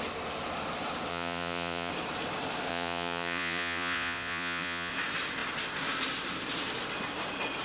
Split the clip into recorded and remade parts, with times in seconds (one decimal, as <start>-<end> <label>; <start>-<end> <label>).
0.0-1.1 recorded; 1.1-1.9 remade; 1.9-2.7 recorded; 2.7-4.9 remade; 4.9-7.6 recorded